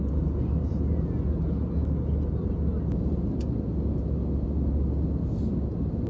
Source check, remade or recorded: recorded